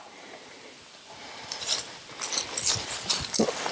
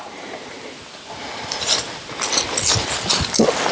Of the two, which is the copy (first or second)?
first